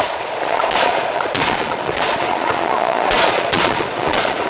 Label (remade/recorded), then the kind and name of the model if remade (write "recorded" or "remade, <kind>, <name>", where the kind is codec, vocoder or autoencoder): remade, vocoder, Vocos